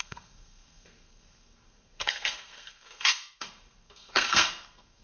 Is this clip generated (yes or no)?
yes